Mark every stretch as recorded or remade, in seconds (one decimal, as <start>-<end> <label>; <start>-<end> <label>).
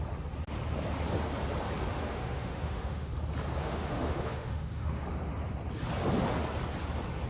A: 0.0-1.9 recorded; 1.9-3.1 remade; 3.1-3.6 recorded; 3.6-5.0 remade; 5.0-7.3 recorded